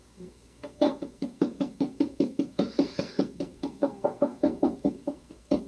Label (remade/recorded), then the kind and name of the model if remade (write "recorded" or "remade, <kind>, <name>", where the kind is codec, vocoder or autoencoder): remade, codec, SNAC